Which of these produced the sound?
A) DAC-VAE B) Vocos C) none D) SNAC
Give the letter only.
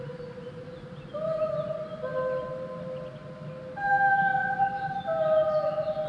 C